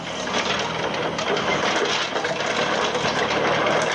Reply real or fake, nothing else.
real